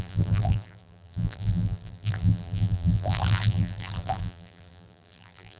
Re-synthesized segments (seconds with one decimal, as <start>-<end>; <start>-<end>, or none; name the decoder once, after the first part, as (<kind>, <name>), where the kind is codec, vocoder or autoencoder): 0.0-5.6 (vocoder, BigVGAN v2)